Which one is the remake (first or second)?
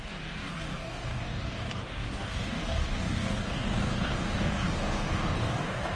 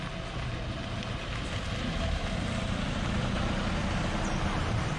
first